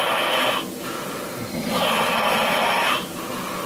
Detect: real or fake real